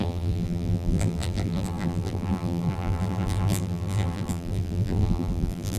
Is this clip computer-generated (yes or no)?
yes